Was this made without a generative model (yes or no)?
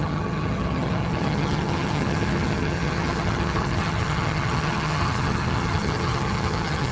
no